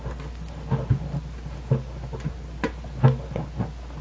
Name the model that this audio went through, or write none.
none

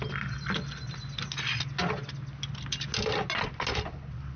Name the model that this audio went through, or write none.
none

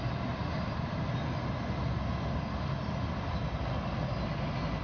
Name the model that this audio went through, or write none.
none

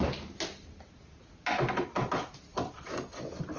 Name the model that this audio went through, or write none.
none